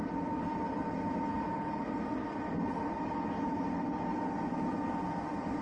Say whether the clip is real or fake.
real